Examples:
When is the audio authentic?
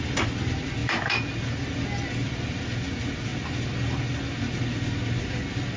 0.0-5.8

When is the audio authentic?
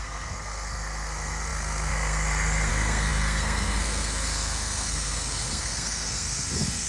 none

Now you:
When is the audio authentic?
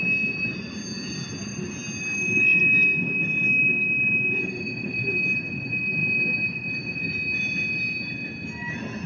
0.0-9.1